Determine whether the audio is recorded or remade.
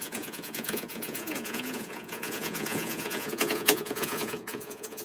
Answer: remade